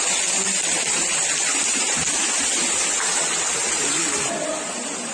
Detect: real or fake real